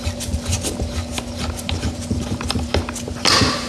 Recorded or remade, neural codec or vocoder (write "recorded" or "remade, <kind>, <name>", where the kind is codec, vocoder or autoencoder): recorded